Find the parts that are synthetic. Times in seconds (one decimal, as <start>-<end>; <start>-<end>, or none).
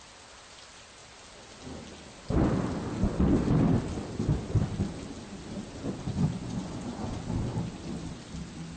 6.1-7.2